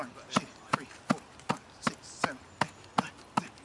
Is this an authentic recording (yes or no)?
yes